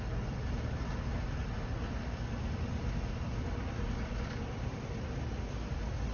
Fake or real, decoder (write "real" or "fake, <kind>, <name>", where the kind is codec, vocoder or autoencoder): real